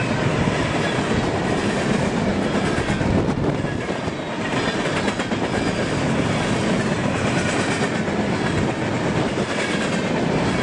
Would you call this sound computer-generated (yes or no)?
no